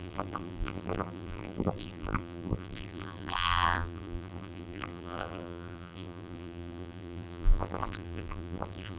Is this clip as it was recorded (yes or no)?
no